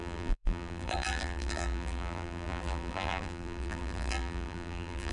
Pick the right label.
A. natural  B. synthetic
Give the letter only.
B